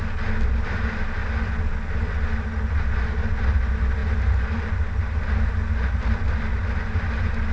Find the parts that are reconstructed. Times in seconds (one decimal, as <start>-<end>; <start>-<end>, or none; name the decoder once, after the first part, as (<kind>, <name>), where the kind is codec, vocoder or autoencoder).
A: none